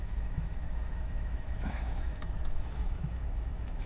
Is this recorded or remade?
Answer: remade